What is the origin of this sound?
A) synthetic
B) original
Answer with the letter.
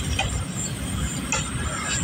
B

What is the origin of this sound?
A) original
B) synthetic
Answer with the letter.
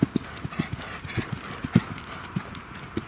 A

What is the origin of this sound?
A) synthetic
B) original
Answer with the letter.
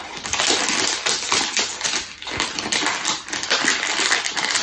B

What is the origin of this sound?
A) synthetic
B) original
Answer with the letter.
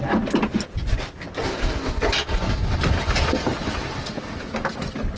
B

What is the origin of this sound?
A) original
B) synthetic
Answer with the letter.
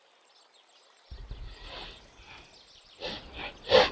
A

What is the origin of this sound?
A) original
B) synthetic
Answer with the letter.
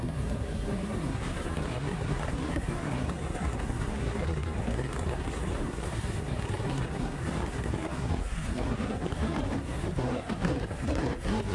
B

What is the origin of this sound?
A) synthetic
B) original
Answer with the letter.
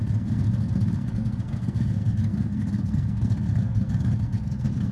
A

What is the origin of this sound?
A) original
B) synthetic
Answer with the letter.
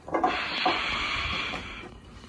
A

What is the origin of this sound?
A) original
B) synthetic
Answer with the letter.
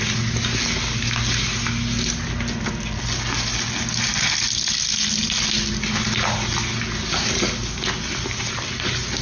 A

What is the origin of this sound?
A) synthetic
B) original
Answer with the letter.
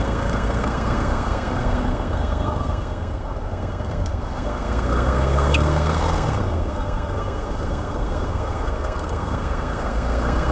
A